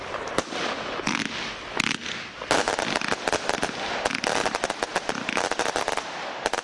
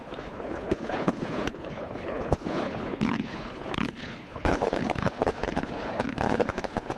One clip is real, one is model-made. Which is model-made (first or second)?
second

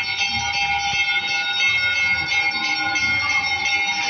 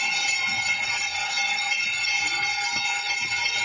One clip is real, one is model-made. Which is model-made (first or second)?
second